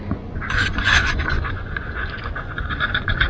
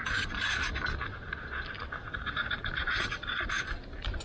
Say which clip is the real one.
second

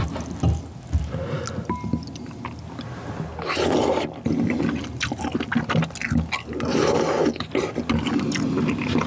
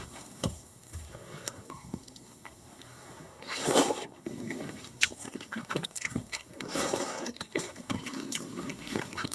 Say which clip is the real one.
first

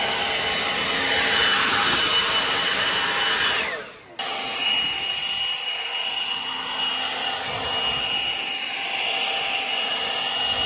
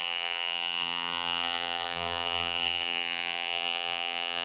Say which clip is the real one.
first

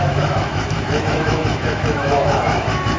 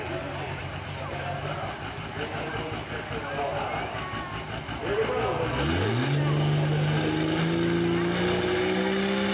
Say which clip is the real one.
second